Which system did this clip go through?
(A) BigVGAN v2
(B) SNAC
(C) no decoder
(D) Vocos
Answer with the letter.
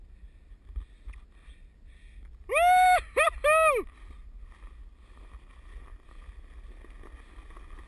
C